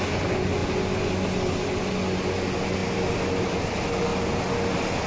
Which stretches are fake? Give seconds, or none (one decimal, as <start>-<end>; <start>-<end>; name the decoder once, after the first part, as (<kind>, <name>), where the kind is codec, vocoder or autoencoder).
none